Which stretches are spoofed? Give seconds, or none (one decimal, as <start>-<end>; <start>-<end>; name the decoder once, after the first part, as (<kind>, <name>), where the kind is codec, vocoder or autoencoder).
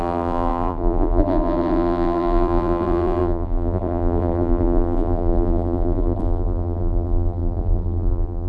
0.0-8.5 (vocoder, BigVGAN v2)